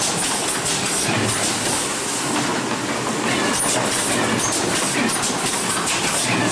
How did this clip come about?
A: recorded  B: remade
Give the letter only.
A